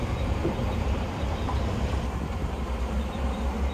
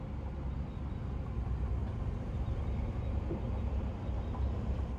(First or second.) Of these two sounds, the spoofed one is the first